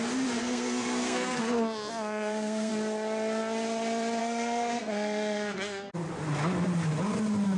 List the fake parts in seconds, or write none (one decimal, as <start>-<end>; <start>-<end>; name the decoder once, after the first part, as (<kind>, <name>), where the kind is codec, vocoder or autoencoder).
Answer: 0.4-2.7 (codec, SNAC); 4.2-5.9